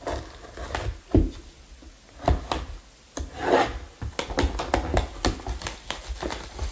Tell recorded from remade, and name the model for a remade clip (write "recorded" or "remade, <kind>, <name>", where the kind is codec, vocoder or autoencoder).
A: recorded